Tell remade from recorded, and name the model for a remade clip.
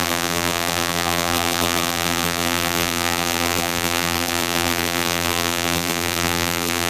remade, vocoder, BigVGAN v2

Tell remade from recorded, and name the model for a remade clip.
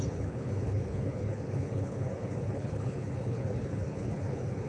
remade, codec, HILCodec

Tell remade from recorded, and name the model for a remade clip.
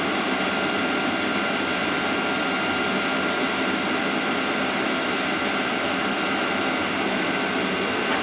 recorded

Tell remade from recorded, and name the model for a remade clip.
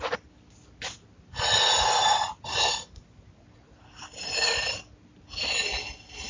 recorded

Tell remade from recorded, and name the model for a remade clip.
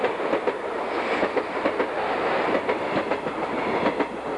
recorded